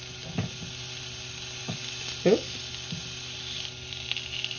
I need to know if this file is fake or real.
real